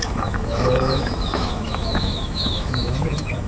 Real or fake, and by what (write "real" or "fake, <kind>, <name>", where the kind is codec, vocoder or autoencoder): fake, autoencoder, DAC-VAE